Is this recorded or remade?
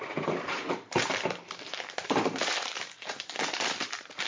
remade